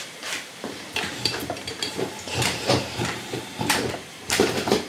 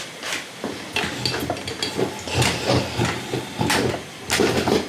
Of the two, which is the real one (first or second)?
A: second